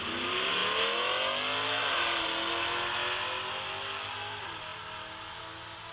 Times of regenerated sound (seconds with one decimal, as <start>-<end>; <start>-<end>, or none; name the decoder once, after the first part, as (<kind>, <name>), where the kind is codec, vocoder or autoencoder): none